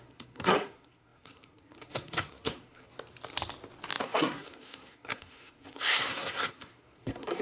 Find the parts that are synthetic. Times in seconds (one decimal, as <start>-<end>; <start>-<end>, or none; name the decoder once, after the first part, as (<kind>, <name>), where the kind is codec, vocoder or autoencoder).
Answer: 0.0-2.9 (codec, SNAC); 4.0-7.4